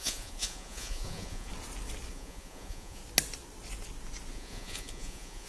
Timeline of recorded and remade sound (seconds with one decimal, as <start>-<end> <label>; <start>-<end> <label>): 0.0-1.5 remade; 1.5-2.1 recorded; 2.1-3.0 remade; 3.0-4.3 recorded; 4.3-5.5 remade